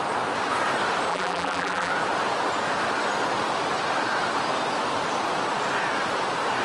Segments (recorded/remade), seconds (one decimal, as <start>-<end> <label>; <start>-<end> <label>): 0.0-1.1 recorded; 1.1-1.9 remade; 1.9-6.6 recorded

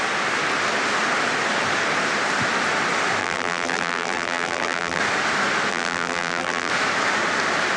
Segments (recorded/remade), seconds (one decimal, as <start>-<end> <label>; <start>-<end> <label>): 0.0-3.2 recorded; 3.2-5.0 remade; 5.0-5.7 recorded; 5.7-6.7 remade; 6.7-7.8 recorded